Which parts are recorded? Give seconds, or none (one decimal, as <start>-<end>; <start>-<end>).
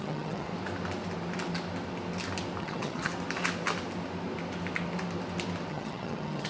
0.5-2.6; 3.1-5.7